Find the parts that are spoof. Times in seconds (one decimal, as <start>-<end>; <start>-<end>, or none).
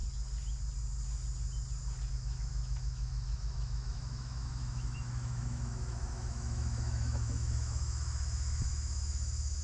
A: 2.1-9.6